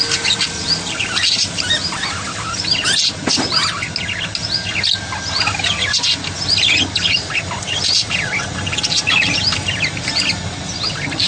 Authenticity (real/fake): real